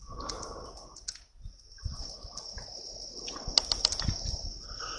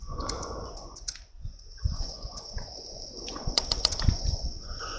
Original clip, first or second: first